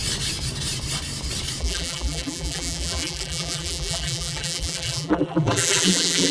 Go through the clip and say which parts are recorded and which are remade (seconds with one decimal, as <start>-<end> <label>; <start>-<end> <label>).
0.0-1.6 recorded; 1.6-6.3 remade